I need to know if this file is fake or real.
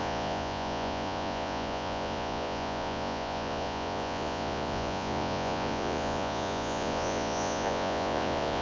fake